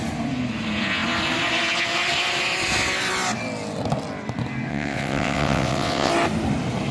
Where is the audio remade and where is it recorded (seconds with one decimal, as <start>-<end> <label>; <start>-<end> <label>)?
0.0-4.7 recorded; 4.7-6.1 remade; 6.1-6.9 recorded